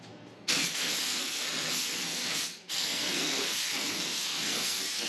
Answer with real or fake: fake